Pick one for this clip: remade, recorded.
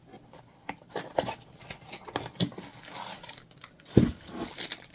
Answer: recorded